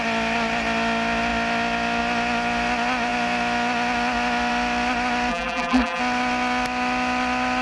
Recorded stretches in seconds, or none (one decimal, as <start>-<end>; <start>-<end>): 0.0-5.3; 6.0-7.6

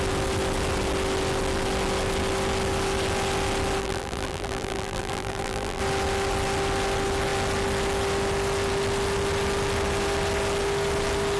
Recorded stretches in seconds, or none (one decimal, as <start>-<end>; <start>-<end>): 0.0-3.8; 5.8-11.4